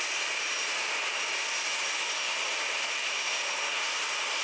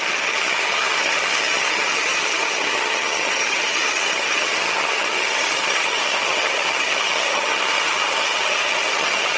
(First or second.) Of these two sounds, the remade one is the second